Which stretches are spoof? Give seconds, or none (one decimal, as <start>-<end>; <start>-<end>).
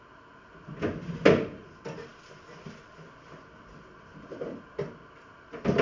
none